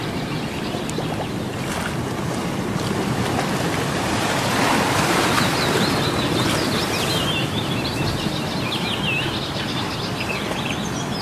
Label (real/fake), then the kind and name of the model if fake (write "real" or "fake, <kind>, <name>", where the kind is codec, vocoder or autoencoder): real